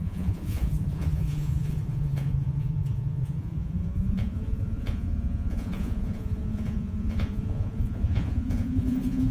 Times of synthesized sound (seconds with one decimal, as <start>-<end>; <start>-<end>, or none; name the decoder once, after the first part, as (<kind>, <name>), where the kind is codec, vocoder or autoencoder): 0.0-9.3 (vocoder, Vocos)